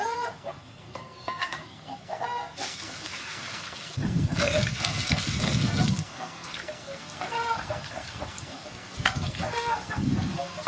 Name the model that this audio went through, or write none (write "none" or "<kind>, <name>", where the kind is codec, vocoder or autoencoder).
codec, SNAC